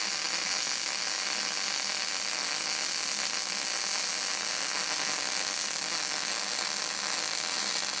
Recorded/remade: recorded